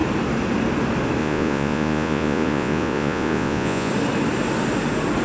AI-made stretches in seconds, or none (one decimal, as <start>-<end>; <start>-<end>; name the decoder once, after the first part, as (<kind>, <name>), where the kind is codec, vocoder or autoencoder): 1.2-3.9 (vocoder, Vocos)